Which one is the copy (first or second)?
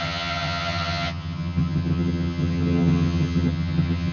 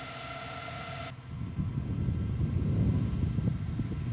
first